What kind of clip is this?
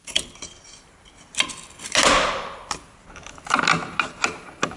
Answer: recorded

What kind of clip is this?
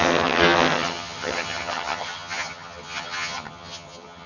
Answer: remade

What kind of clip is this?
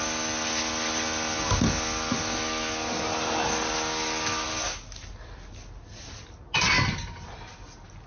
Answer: recorded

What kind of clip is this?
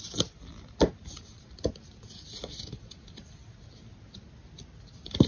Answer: recorded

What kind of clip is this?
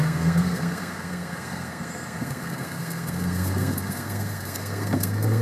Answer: remade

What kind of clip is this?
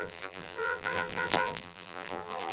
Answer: remade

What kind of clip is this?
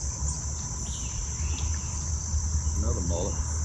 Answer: recorded